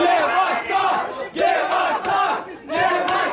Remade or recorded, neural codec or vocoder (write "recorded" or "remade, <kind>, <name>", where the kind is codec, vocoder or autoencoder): recorded